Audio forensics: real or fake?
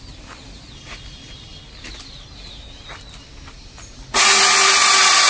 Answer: real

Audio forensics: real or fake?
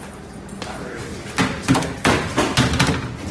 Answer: real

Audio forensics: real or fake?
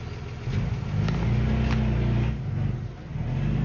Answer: real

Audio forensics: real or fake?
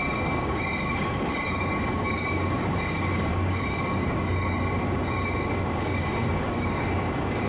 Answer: fake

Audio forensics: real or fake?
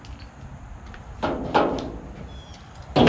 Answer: real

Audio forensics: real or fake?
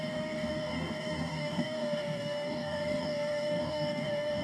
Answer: fake